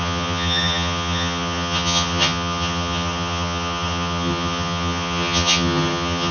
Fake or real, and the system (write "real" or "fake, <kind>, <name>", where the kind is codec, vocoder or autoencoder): fake, vocoder, HiFi-GAN